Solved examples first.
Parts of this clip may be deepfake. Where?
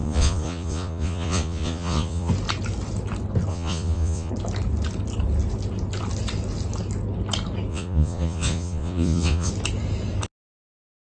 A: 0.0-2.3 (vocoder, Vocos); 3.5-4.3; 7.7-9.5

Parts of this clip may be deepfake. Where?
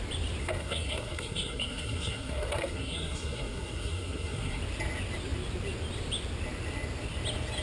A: 0.4-4.6 (codec, SNAC)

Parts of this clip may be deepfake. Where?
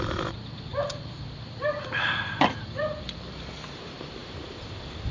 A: 0.7-3.5 (vocoder, BigVGAN v2); 4.2-5.1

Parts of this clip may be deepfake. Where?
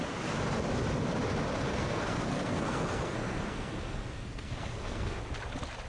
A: 1.7-5.2 (codec, SNAC)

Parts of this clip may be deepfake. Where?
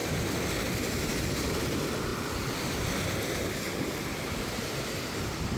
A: none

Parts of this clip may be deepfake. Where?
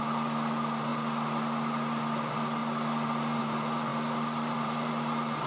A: none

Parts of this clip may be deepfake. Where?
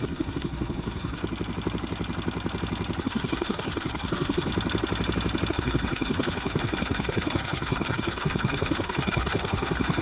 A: 0.0-1.2 (codec, SNAC); 3.0-4.5; 5.5-10.0